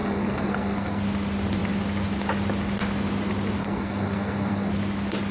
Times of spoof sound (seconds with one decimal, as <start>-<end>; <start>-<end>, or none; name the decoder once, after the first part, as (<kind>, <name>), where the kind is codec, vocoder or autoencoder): 0.0-1.0 (codec, SNAC); 3.6-4.7